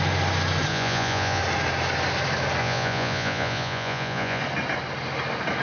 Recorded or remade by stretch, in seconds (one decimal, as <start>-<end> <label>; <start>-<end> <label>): 0.0-0.7 recorded; 0.7-1.4 remade; 1.4-2.6 recorded; 2.6-4.4 remade; 4.4-5.6 recorded